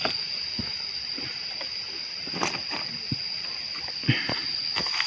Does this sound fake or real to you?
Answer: real